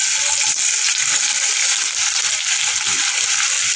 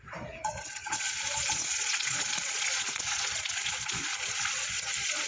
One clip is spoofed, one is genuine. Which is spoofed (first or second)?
second